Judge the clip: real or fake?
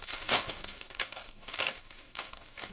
fake